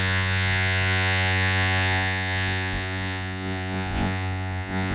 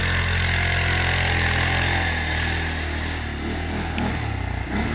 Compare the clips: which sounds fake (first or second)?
first